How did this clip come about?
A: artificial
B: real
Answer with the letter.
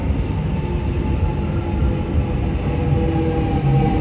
B